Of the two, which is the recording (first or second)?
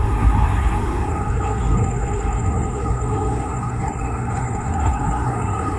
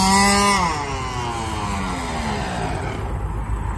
second